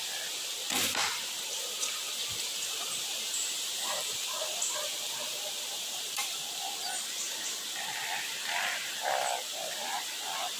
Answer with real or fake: fake